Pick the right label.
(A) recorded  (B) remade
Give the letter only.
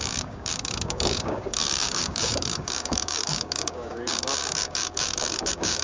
B